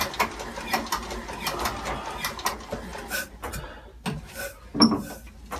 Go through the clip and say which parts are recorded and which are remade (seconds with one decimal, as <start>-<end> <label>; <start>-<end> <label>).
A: 0.0-5.6 recorded